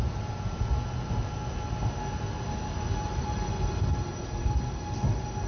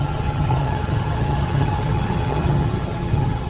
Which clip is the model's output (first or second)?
second